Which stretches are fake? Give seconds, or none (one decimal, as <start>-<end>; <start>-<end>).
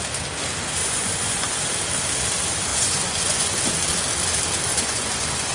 0.8-1.6; 2.7-3.7; 4.7-5.5